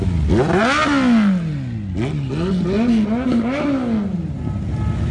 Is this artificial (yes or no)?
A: no